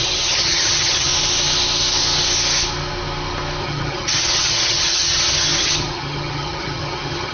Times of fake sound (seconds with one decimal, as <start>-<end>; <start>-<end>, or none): 0.0-1.1; 3.6-7.3